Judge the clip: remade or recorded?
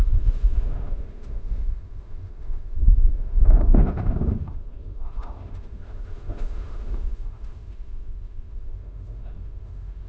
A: remade